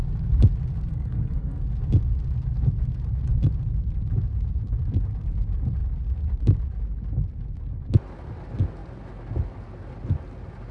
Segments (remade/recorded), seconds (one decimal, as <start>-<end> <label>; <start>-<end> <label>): 0.0-0.9 recorded; 0.9-1.6 remade; 1.6-10.7 recorded